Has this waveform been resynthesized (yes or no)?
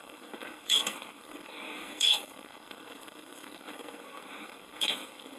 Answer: yes